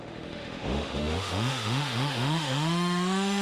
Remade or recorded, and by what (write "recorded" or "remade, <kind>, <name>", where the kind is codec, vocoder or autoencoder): remade, autoencoder, DAC-VAE